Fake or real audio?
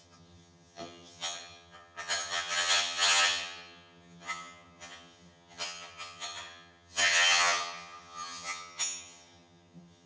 fake